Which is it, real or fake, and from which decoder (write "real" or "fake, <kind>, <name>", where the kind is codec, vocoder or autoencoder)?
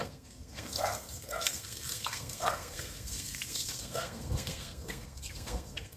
fake, codec, SNAC